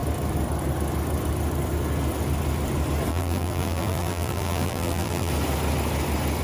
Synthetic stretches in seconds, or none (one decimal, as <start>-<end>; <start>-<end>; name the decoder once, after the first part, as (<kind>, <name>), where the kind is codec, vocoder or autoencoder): 3.1-5.3 (vocoder, BigVGAN v2)